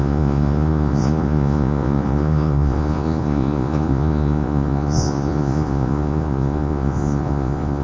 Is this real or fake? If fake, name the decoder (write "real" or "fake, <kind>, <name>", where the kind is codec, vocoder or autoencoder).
fake, vocoder, Vocos